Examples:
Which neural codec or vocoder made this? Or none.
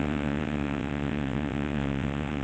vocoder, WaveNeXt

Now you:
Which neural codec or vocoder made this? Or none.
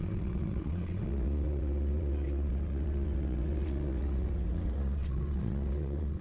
vocoder, WaveNeXt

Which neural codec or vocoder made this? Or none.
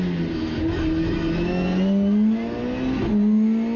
none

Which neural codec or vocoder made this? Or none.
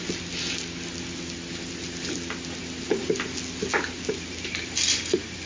none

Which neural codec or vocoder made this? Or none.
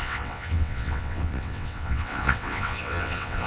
vocoder, WaveNeXt